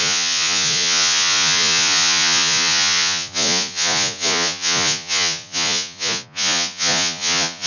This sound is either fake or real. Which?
fake